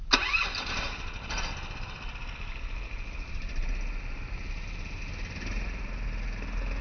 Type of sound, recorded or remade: recorded